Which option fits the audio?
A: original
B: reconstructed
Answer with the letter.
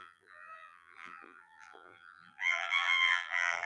B